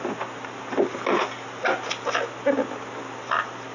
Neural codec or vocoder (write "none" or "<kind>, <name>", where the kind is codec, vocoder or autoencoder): none